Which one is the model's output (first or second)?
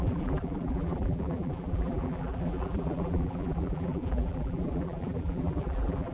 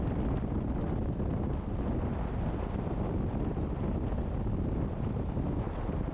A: first